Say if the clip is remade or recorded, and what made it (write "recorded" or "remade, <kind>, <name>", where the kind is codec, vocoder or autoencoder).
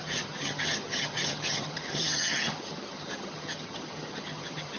remade, vocoder, HiFi-GAN